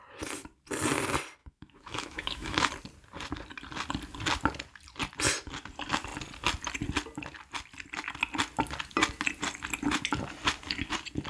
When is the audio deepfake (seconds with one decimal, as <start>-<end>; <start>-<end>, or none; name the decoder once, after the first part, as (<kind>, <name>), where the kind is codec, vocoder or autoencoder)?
1.4-2.7 (autoencoder, DAC-VAE)